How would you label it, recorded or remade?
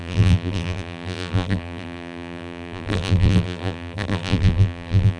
remade